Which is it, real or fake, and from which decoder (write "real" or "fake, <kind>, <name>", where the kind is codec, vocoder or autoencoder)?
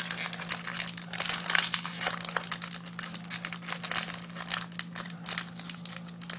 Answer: real